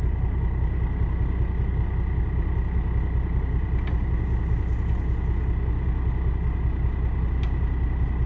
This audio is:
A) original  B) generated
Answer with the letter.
A